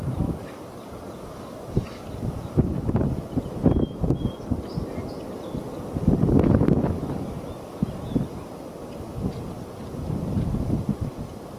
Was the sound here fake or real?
real